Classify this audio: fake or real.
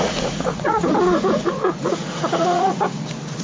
fake